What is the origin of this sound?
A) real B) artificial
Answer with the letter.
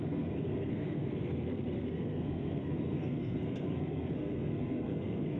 B